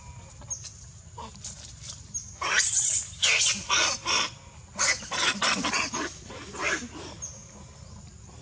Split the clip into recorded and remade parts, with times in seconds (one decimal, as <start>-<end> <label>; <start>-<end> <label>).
0.0-8.4 recorded

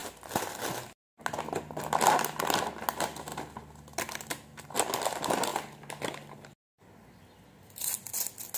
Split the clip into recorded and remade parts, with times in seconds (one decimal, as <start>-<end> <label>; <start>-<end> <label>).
0.0-8.6 recorded

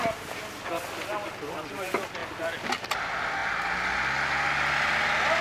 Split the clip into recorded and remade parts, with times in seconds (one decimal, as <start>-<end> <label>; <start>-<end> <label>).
0.0-5.4 recorded

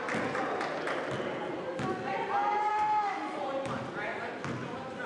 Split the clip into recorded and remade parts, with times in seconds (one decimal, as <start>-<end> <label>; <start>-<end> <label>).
0.0-2.7 recorded; 2.7-3.4 remade; 3.4-5.1 recorded

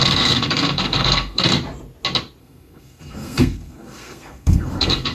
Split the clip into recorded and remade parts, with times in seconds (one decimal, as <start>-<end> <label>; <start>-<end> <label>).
0.0-1.5 remade; 1.5-2.4 recorded; 2.4-5.1 remade